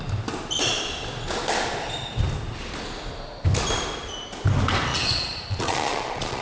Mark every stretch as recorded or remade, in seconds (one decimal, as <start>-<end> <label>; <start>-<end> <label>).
0.0-4.9 recorded; 4.9-6.4 remade